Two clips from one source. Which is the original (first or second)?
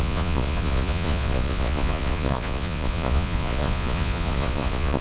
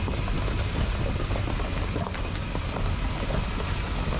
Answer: second